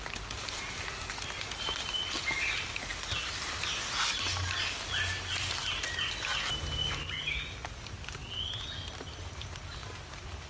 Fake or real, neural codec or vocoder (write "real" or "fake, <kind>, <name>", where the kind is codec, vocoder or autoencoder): real